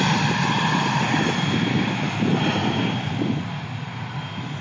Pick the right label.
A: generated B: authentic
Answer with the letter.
B